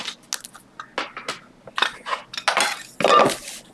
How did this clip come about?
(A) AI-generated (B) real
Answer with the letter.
B